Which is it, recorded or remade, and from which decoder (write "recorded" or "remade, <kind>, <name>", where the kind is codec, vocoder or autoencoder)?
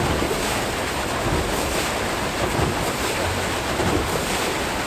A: recorded